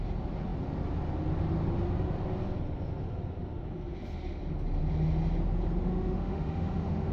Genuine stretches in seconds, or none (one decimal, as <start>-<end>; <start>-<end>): 0.0-5.8